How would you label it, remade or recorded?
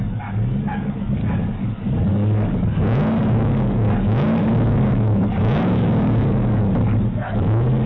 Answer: remade